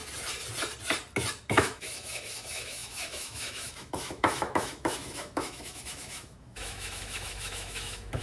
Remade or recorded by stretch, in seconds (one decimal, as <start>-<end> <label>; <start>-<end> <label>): 0.0-1.5 recorded; 1.5-8.2 remade